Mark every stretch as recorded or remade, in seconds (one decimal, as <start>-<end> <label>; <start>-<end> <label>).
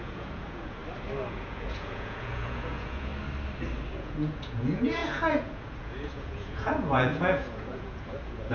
0.0-0.8 remade; 0.8-1.3 recorded; 1.3-3.1 remade; 3.1-3.9 recorded; 3.9-8.5 remade